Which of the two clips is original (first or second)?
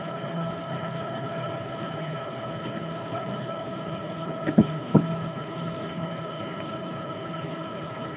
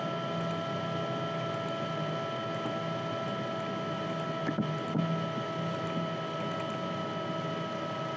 second